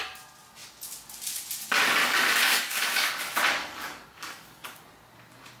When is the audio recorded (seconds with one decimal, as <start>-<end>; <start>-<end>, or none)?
0.0-2.0; 3.2-3.6; 4.8-5.6